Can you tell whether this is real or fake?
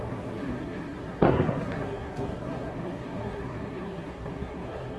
fake